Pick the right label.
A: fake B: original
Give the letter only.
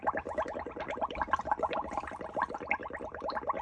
B